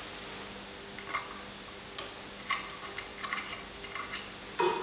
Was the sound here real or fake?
real